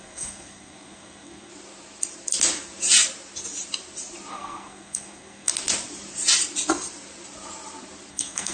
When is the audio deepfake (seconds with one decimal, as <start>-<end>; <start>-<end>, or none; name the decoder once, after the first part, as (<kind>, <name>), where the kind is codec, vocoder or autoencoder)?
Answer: 0.0-1.5 (codec, SNAC); 4.3-5.5; 8.1-8.5